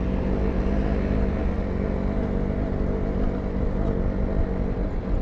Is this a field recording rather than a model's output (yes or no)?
yes